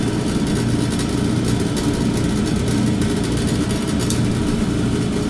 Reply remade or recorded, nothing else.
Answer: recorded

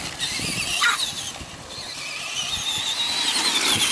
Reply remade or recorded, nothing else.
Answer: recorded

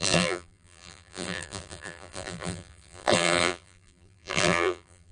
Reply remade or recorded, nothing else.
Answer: remade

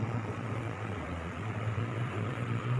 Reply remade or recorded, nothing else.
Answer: remade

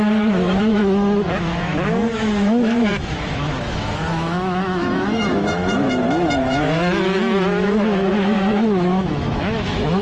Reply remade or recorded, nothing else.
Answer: remade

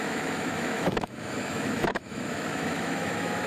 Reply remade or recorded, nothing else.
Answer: remade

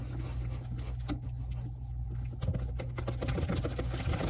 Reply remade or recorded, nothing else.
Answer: recorded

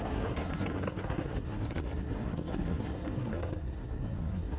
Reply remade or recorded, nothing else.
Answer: remade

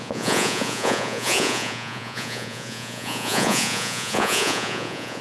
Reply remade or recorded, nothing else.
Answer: remade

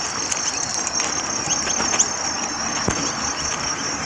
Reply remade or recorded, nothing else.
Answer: recorded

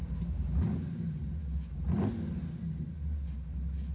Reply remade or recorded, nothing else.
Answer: recorded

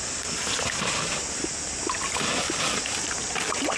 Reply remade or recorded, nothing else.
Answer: recorded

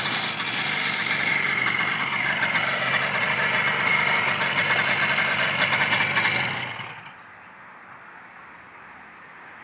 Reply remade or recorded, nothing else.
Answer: recorded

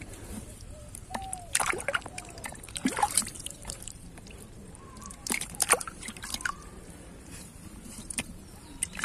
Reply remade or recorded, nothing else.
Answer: remade